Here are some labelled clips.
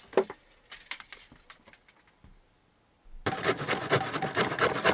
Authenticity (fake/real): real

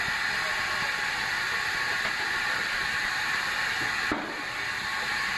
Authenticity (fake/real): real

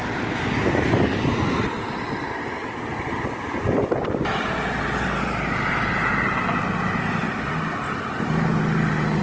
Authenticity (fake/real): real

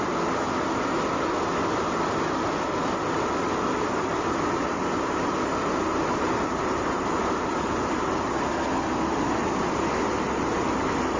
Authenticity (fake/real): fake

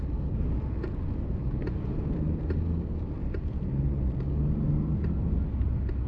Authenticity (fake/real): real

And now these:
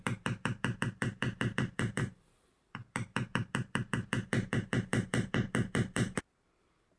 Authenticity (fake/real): fake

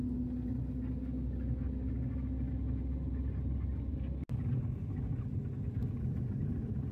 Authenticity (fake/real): real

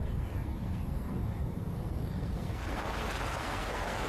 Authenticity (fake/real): fake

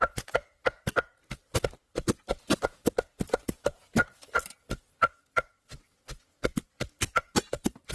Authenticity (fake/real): real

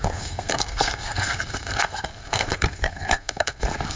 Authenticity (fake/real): fake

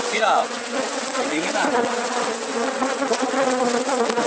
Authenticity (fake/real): fake